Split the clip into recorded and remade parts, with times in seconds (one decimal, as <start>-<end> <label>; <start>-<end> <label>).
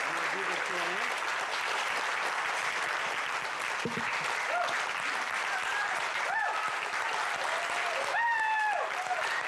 0.0-1.3 recorded; 1.3-6.4 remade; 6.4-9.5 recorded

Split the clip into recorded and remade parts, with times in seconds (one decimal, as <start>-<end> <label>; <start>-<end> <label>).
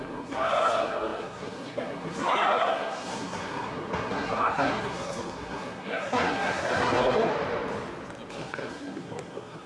0.0-7.3 remade; 7.3-8.3 recorded; 8.3-9.7 remade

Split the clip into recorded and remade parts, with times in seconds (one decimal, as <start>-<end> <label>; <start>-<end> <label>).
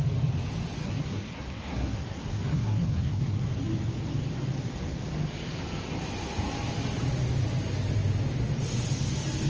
0.0-0.8 recorded; 0.8-3.4 remade; 3.4-9.5 recorded